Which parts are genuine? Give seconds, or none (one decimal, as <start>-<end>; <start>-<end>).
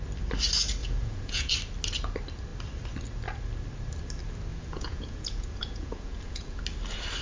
0.0-0.8; 1.5-4.5; 6.6-7.2